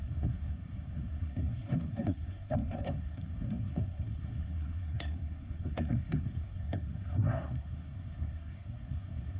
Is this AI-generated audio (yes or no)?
yes